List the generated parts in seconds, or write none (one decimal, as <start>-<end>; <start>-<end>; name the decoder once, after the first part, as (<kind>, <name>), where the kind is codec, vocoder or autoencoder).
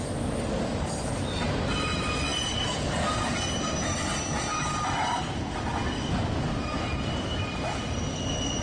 none